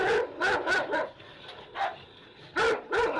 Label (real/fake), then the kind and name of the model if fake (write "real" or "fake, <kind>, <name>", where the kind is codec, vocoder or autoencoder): fake, vocoder, BigVGAN v2